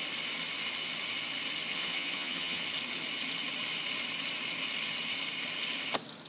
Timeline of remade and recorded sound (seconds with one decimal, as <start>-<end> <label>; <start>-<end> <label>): 0.0-1.7 recorded; 1.7-2.6 remade; 2.6-6.3 recorded

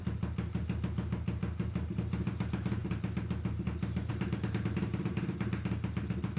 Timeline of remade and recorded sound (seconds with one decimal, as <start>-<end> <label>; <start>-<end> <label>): 0.0-6.4 recorded

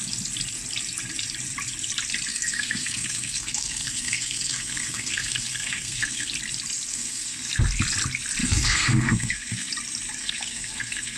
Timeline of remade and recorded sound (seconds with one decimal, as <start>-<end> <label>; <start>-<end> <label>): 0.0-2.3 recorded; 2.3-6.3 remade; 6.3-6.9 recorded; 6.9-7.5 remade; 7.5-8.4 recorded; 8.4-9.7 remade; 9.7-10.2 recorded; 10.2-11.2 remade

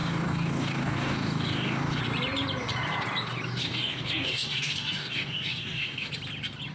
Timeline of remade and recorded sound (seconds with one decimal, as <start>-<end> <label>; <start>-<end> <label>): 0.0-2.0 remade; 2.0-3.6 recorded; 3.6-6.1 remade; 6.1-6.7 recorded

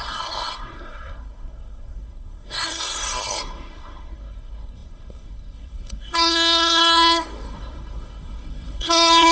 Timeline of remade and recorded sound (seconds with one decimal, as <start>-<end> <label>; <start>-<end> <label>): 0.0-9.3 remade

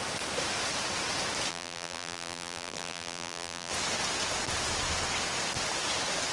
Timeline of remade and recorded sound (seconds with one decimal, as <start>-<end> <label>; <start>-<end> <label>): 0.0-1.5 recorded; 1.5-3.7 remade; 3.7-6.3 recorded

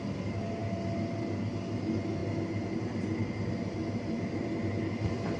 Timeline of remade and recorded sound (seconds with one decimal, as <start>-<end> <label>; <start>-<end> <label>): 0.0-2.2 recorded; 2.2-5.4 remade

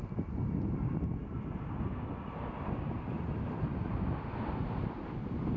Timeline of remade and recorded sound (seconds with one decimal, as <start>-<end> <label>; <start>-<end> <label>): 0.0-5.6 recorded